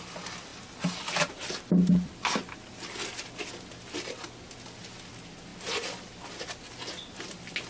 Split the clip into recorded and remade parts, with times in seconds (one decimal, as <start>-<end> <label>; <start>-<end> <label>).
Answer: 0.0-7.7 recorded